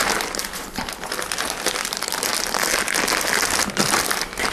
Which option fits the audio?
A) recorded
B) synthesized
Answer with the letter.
A